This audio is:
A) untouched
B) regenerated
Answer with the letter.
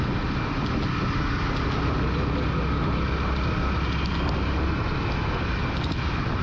A